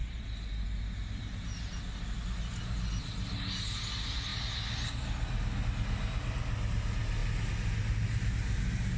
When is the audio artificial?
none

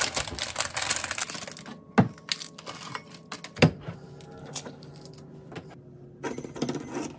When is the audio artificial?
4.4-4.9 (codec, HILCodec)

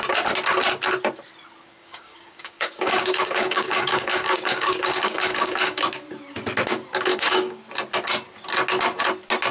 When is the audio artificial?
1.7-5.8 (codec, DAC); 7.1-7.6

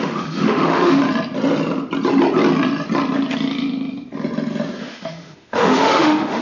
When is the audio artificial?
0.0-1.0 (autoencoder, DAC-VAE); 4.8-6.4

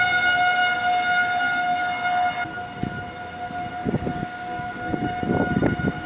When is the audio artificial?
3.8-5.2 (codec, DAC)